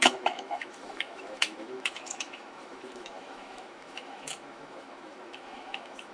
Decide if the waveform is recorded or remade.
remade